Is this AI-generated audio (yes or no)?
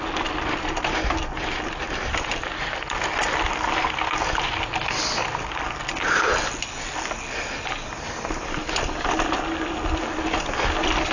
no